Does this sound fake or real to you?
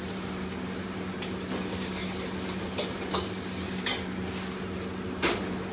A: real